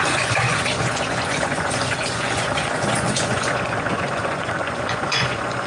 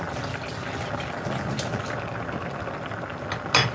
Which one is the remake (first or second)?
first